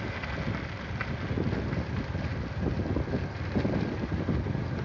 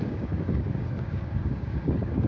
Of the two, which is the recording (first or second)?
first